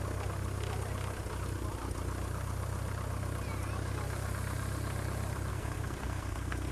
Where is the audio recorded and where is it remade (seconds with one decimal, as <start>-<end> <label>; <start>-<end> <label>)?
0.0-5.5 recorded; 5.5-6.7 remade